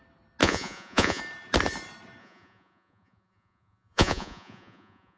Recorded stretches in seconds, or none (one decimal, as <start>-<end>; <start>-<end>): 0.0-0.4; 1.2-2.2